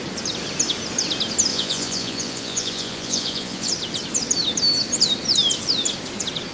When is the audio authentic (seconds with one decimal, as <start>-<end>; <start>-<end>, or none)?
0.0-1.5; 3.7-6.5